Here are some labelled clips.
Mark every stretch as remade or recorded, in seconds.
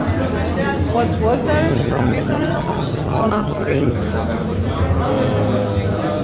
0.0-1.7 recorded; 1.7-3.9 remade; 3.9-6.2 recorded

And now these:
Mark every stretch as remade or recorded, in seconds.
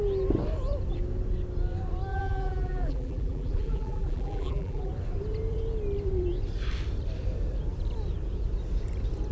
0.0-2.1 recorded; 2.1-4.9 remade; 4.9-9.3 recorded